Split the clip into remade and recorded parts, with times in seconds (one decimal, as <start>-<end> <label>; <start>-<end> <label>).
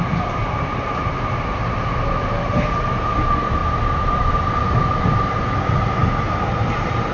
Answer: 0.0-7.1 remade